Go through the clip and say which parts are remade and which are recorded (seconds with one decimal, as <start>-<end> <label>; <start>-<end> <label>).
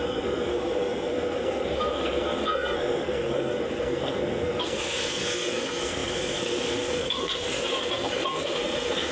0.0-9.1 remade